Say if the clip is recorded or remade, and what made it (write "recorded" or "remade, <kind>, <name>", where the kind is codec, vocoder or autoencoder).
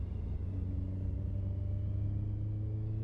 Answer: recorded